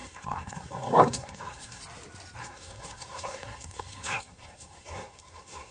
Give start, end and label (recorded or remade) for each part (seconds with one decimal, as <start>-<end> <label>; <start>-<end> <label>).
0.0-1.8 remade; 1.8-2.4 recorded; 2.4-5.7 remade

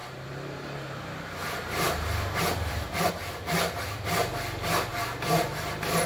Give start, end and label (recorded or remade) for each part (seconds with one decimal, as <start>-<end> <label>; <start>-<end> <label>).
0.0-3.1 remade; 3.1-4.9 recorded; 4.9-6.1 remade

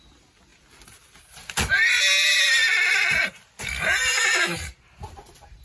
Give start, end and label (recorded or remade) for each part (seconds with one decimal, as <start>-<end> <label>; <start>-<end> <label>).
0.0-5.6 recorded

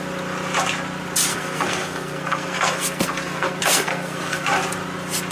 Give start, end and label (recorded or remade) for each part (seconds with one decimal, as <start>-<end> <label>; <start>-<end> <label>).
0.0-1.3 recorded; 1.3-4.5 remade; 4.5-5.3 recorded

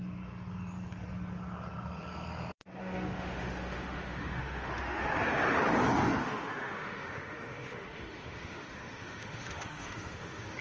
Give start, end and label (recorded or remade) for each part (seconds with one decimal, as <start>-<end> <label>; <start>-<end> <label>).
0.0-2.8 recorded; 2.8-5.2 remade; 5.2-6.2 recorded; 6.2-10.6 remade

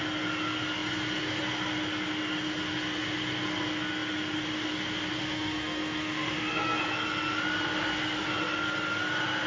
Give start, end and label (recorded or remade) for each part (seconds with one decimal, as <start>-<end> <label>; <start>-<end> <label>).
0.0-5.2 recorded; 5.2-6.8 remade; 6.8-9.5 recorded

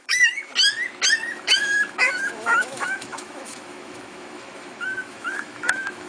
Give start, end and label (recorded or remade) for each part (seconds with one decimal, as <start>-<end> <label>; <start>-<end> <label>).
0.0-0.5 remade; 0.5-1.3 recorded; 1.3-6.1 remade